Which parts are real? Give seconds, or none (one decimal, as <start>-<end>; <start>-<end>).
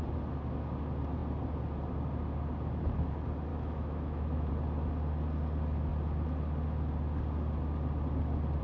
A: 0.0-3.5; 4.5-8.6